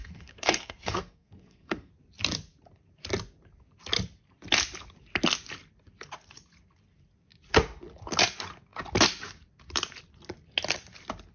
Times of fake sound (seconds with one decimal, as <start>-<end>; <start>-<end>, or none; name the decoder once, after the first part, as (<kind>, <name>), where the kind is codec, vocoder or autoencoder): 0.0-1.9 (codec, SNAC)